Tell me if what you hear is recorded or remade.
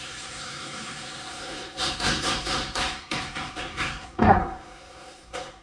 remade